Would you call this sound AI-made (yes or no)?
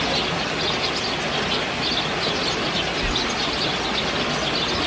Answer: no